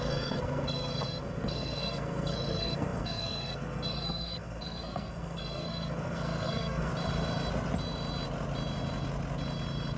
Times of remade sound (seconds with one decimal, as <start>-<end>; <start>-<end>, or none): 0.0-6.9